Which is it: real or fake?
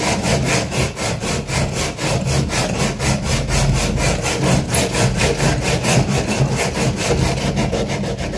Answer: real